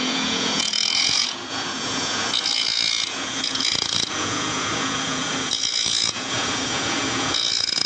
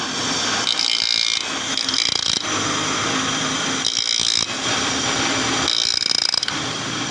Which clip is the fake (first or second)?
first